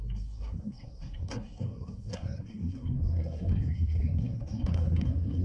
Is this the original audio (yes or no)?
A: no